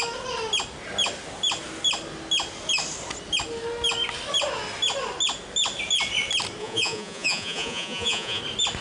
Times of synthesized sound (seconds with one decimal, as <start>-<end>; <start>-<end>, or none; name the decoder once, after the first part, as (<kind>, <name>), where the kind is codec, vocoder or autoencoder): 6.6-8.4 (vocoder, Vocos)